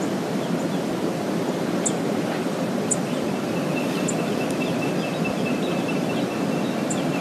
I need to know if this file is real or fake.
real